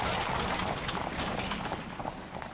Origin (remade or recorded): recorded